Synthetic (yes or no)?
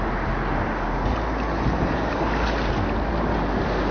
no